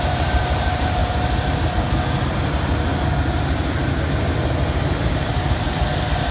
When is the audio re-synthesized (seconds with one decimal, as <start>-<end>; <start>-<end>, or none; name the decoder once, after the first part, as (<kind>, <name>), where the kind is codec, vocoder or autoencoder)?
0.0-1.0 (vocoder, BigVGAN v2); 4.7-6.3